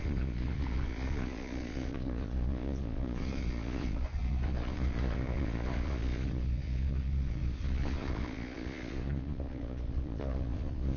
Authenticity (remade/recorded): remade